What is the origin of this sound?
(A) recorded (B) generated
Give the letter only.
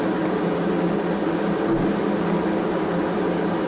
A